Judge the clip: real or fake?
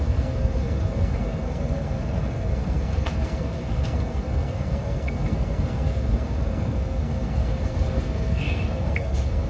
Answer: fake